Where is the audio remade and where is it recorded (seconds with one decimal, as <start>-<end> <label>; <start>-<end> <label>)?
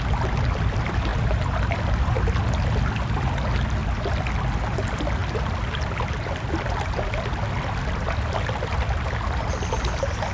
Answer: 0.0-10.3 recorded